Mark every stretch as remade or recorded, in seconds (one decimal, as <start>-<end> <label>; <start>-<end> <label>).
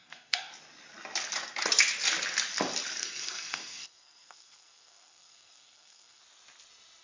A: 0.0-0.5 remade; 0.5-3.0 recorded; 3.0-6.2 remade; 6.2-7.0 recorded